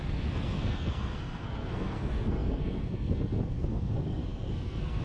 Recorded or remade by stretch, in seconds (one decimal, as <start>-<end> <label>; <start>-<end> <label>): 0.0-5.0 remade